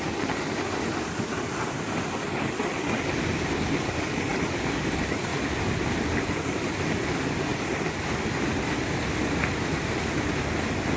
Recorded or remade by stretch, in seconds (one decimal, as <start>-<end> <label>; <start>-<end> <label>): 0.0-4.3 recorded; 4.3-4.8 remade; 4.8-11.0 recorded